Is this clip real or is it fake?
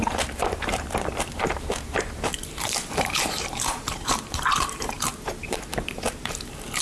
fake